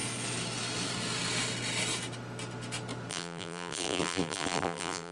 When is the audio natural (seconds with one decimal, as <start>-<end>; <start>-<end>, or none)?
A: 0.0-3.1